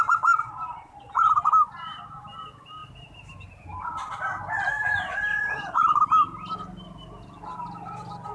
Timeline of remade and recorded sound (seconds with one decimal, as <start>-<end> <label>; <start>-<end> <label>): 0.0-0.4 recorded; 0.4-1.5 remade; 1.5-5.3 recorded; 5.3-6.0 remade; 6.0-8.3 recorded